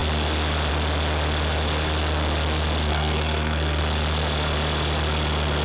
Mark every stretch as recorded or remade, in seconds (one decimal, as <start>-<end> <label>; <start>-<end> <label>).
0.0-2.9 recorded; 2.9-3.8 remade; 3.8-5.6 recorded